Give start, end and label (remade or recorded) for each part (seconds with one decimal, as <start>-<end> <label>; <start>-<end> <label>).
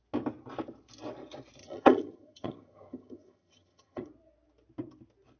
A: 0.0-1.6 recorded; 1.6-4.1 remade; 4.1-5.4 recorded